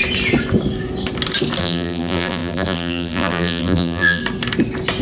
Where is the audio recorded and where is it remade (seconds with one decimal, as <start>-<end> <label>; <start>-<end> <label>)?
0.0-1.6 recorded; 1.6-4.2 remade; 4.2-5.0 recorded